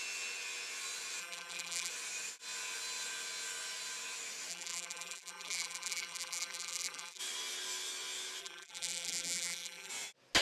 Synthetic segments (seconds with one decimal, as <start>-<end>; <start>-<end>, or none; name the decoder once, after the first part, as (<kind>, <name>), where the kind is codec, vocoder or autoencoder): 1.2-1.9 (vocoder, BigVGAN v2); 4.5-7.2; 8.4-9.9